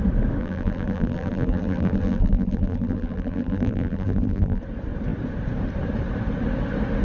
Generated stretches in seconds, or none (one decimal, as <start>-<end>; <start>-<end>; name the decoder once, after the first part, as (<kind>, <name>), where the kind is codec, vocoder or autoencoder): 0.4-4.6 (vocoder, BigVGAN v2)